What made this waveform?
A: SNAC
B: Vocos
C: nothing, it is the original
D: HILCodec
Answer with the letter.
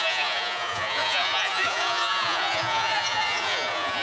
B